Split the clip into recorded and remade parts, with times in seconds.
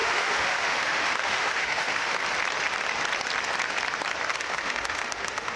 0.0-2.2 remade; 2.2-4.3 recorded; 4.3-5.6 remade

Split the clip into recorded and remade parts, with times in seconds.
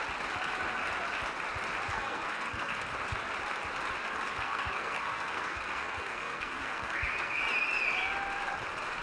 0.0-1.9 recorded; 1.9-2.9 remade; 2.9-4.3 recorded; 4.3-7.4 remade; 7.4-9.0 recorded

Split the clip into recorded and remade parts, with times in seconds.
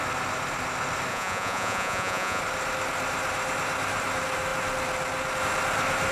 0.0-1.1 recorded; 1.1-2.4 remade; 2.4-6.1 recorded